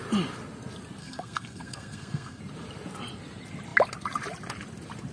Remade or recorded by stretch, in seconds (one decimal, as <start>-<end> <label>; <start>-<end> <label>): 0.0-1.0 recorded; 1.0-2.4 remade; 2.4-5.1 recorded